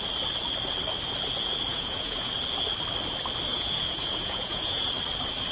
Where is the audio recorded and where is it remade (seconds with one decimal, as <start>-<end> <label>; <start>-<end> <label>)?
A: 0.0-1.7 recorded; 1.7-2.3 remade; 2.3-3.5 recorded; 3.5-4.9 remade; 4.9-5.5 recorded